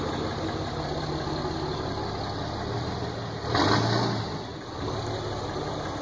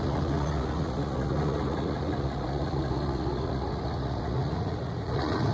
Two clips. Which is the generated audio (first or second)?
second